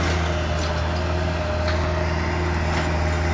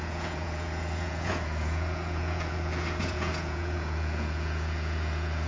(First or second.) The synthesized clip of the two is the second